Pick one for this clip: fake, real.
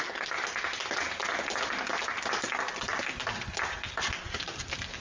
real